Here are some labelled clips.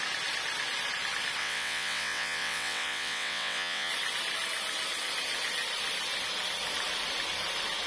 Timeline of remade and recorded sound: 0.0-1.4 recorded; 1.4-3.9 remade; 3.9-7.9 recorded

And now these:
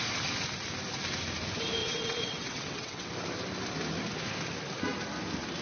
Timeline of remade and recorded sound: 0.0-1.8 recorded; 1.8-3.1 remade; 3.1-5.6 recorded